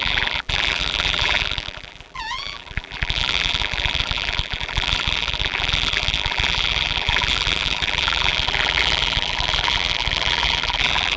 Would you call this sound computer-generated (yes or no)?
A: yes